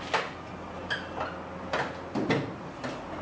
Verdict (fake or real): real